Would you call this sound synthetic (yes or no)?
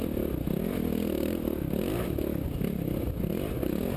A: no